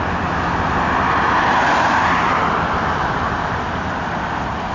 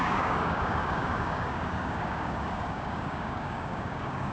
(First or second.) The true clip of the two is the first